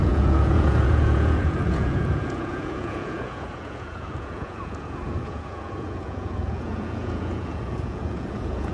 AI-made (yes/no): yes